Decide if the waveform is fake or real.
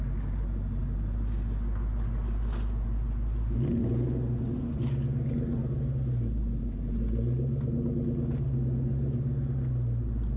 real